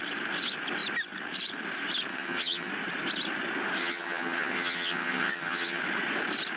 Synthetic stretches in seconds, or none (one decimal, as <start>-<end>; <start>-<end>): 2.1-2.7; 3.8-5.8